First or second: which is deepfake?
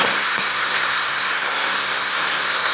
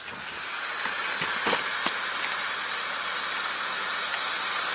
first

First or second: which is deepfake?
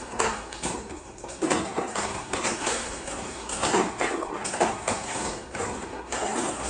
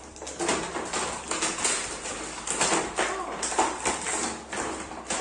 first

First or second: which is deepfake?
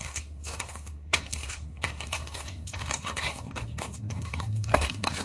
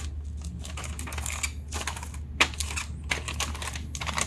first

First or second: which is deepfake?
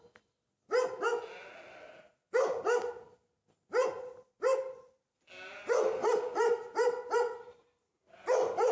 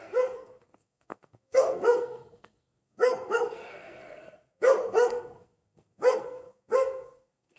second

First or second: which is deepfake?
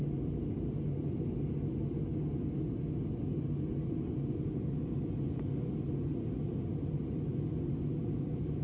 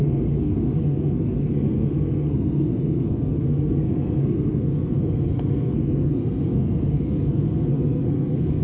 second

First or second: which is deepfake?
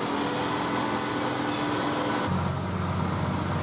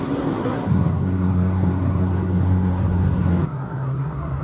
second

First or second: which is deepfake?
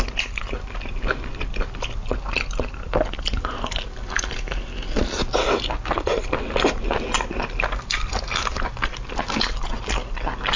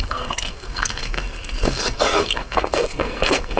second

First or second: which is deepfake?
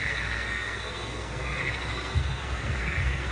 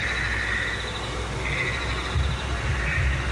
first